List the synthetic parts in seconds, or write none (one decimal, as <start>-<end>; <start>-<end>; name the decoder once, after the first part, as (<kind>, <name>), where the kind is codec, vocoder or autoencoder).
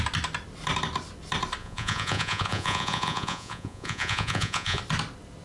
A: 1.6-4.8 (vocoder, Vocos)